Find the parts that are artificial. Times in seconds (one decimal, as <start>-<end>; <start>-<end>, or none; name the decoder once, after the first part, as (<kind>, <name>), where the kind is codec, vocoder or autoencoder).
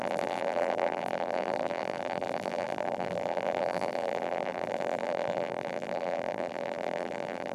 0.0-7.5 (vocoder, BigVGAN v2)